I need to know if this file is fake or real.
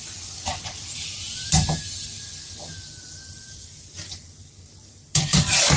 real